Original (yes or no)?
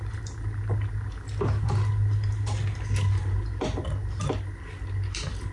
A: yes